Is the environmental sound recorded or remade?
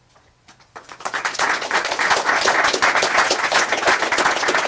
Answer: remade